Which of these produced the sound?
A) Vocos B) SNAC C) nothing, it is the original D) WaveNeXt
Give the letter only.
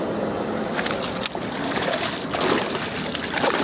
C